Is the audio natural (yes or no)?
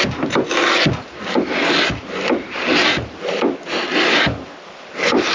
yes